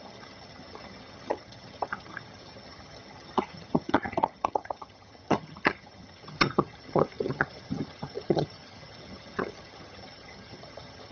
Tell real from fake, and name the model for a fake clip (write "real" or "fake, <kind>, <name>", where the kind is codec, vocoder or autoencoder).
fake, vocoder, HiFi-GAN